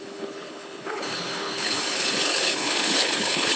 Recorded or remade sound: remade